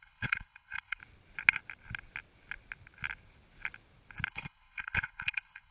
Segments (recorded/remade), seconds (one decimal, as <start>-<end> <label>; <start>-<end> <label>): 0.0-1.0 remade; 1.0-4.3 recorded; 4.3-5.7 remade